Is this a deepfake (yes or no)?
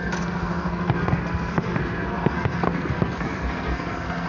yes